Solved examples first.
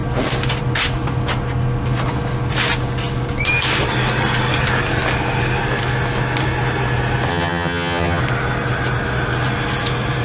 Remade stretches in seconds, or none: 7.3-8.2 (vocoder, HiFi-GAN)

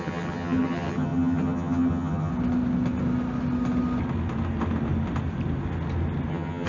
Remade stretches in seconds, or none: 0.0-2.3 (vocoder, HiFi-GAN); 6.3-6.7

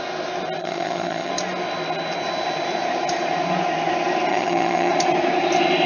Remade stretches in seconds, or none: 0.6-1.3 (vocoder, HiFi-GAN); 4.3-4.9

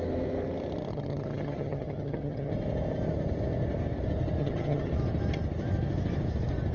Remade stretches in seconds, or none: 0.9-2.5 (vocoder, HiFi-GAN); 4.4-4.9

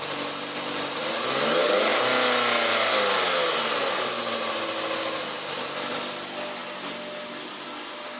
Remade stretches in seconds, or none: none